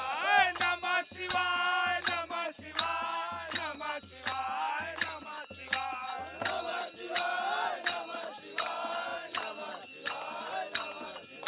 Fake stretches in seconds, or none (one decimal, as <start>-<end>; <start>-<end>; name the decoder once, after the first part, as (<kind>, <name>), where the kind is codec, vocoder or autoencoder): none